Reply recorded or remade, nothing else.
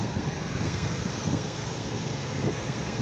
remade